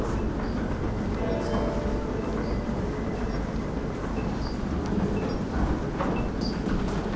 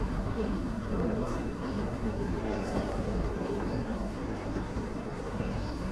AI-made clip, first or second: second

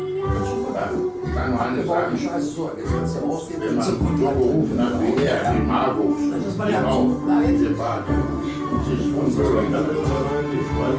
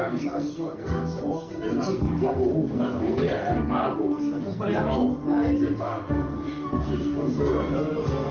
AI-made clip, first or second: second